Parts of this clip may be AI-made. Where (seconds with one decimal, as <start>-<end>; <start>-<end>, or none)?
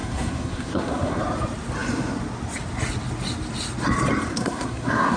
0.0-1.2; 4.3-5.2